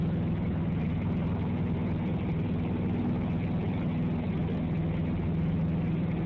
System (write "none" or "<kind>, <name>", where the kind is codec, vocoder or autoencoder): none